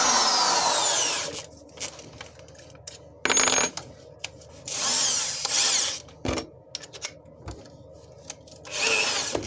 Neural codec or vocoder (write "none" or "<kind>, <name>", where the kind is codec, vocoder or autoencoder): none